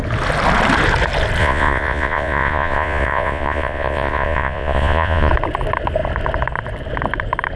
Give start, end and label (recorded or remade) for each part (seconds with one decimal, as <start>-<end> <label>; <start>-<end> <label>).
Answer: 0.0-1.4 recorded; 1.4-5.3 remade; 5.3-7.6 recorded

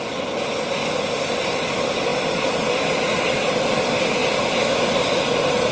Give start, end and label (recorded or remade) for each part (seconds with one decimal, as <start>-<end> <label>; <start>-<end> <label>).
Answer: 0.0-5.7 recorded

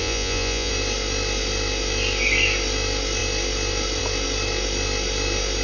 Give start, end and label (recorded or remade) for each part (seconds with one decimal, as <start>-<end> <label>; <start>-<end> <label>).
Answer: 0.0-0.7 remade; 0.7-5.6 recorded

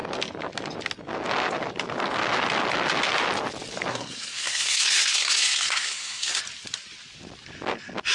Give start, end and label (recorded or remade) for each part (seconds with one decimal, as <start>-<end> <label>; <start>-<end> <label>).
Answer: 0.0-3.9 recorded; 3.9-6.4 remade; 6.4-8.1 recorded

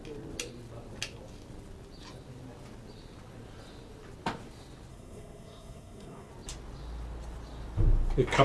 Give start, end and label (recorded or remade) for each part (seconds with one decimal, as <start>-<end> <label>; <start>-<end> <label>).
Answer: 0.0-4.9 recorded; 4.9-6.3 remade; 6.3-8.4 recorded

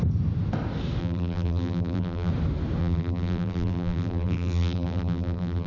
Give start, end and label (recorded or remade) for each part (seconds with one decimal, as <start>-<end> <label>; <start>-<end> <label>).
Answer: 0.0-1.0 recorded; 1.0-2.3 remade; 2.3-2.8 recorded; 2.8-5.7 remade

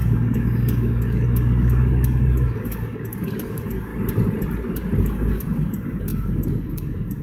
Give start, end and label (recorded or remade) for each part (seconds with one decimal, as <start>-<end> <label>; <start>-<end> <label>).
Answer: 0.0-3.9 remade; 3.9-5.0 recorded; 5.0-7.2 remade